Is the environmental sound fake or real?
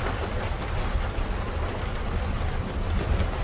real